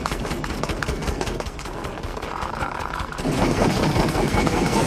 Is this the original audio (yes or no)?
no